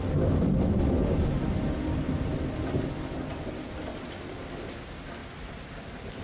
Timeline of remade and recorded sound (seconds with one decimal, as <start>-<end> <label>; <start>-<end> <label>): 0.0-5.2 recorded; 5.2-6.2 remade